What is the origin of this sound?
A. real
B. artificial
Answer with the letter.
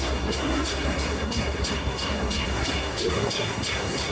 B